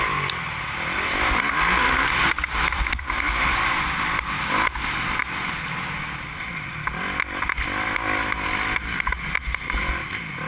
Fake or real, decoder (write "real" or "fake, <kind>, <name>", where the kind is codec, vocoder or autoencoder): real